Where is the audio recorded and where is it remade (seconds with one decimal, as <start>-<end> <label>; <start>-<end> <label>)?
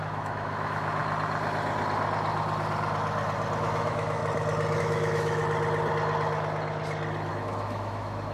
0.0-1.0 remade; 1.0-3.6 recorded; 3.6-4.2 remade; 4.2-4.8 recorded; 4.8-5.4 remade; 5.4-7.3 recorded; 7.3-8.3 remade